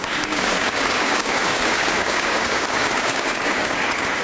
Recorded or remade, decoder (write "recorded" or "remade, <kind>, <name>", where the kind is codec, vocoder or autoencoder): remade, codec, DAC